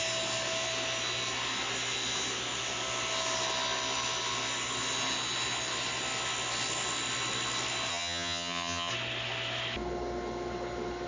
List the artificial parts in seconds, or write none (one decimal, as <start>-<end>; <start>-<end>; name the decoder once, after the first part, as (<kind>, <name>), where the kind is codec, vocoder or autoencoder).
7.9-8.9 (vocoder, HiFi-GAN)